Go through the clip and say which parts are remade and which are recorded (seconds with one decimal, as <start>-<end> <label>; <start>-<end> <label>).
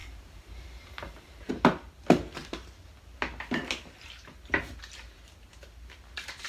0.0-1.5 remade; 1.5-6.5 recorded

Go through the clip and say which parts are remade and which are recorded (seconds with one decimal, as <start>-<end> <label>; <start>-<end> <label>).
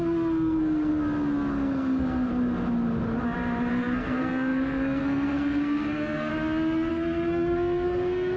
0.0-0.9 remade; 0.9-1.5 recorded; 1.5-2.3 remade; 2.3-3.7 recorded; 3.7-6.3 remade; 6.3-6.9 recorded; 6.9-8.4 remade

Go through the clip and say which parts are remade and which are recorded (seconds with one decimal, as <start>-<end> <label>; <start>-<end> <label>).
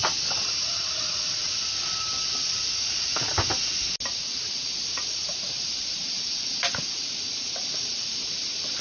0.0-8.8 recorded